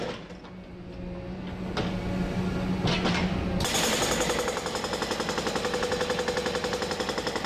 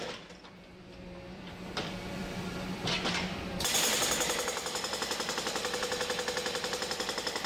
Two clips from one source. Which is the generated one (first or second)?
second